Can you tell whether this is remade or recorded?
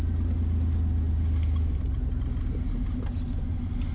recorded